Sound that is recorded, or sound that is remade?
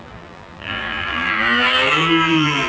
remade